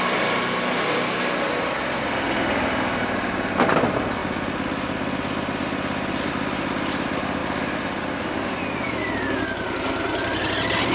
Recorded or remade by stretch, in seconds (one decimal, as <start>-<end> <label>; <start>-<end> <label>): 0.0-10.9 recorded